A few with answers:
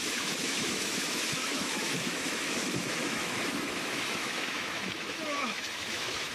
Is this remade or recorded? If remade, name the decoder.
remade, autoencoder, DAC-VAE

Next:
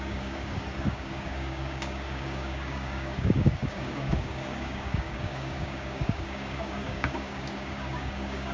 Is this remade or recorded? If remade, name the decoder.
remade, codec, DAC